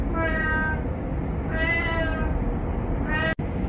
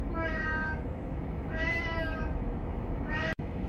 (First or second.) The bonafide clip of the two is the first